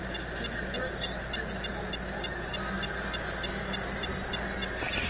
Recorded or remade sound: recorded